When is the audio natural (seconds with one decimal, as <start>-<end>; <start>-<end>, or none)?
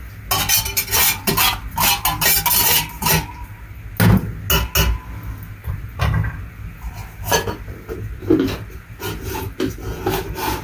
0.0-0.7; 1.3-5.6; 9.0-10.6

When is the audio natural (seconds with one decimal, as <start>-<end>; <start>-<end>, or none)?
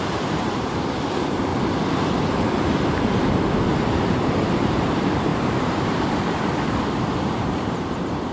1.5-4.7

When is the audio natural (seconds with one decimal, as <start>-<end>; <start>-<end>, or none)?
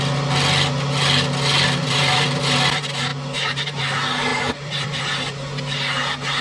0.0-1.8; 2.4-4.3; 5.0-6.4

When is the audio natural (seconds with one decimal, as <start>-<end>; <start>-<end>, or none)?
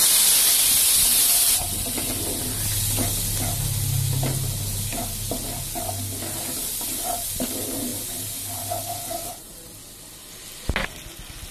0.0-11.5